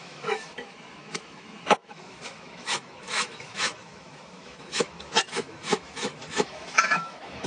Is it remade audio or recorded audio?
remade